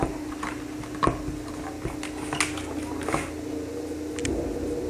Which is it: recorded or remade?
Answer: recorded